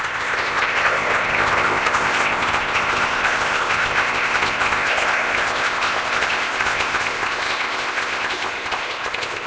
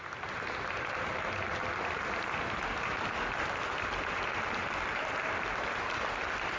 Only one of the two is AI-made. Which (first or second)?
first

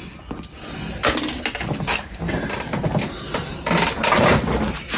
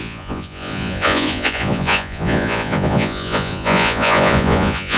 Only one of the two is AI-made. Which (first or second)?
second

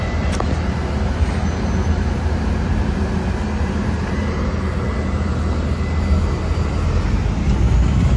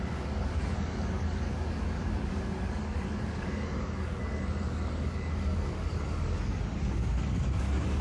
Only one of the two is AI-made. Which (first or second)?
second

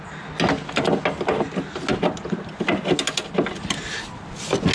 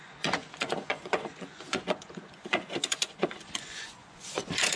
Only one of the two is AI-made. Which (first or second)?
second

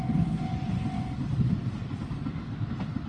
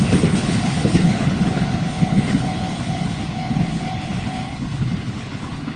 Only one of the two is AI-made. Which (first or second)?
second